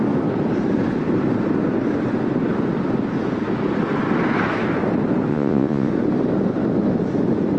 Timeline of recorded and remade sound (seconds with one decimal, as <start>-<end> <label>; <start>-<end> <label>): 0.0-5.3 recorded; 5.3-5.9 remade; 5.9-7.6 recorded